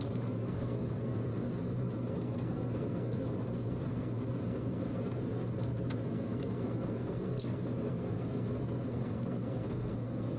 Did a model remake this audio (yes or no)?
yes